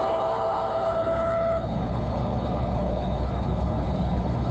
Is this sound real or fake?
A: fake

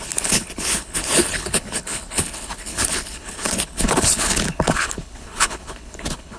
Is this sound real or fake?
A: fake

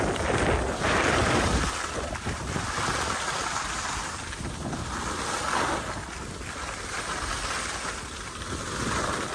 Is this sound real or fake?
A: real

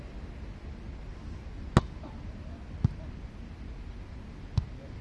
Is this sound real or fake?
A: real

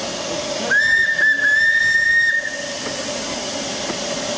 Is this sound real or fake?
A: real